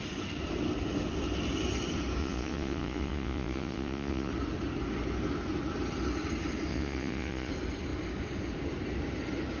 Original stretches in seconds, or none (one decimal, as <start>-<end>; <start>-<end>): 0.0-2.2; 4.3-6.7; 7.5-9.6